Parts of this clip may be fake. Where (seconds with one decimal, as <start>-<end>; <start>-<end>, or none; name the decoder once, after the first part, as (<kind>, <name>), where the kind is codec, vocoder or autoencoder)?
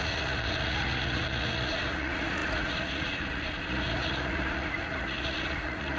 0.0-6.0 (vocoder, Vocos)